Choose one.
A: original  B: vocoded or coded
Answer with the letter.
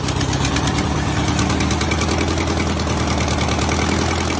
A